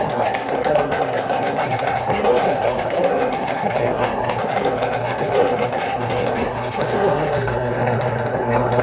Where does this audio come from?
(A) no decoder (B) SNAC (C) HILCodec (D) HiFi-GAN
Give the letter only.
B